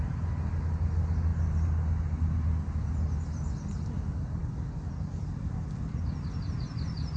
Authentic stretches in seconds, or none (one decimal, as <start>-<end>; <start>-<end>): 0.0-7.2